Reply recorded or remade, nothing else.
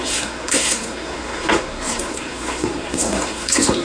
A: remade